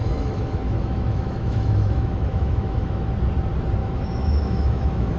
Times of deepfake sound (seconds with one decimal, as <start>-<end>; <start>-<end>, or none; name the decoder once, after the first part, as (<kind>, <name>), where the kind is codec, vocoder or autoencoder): 0.0-3.1 (autoencoder, DAC-VAE); 3.8-5.2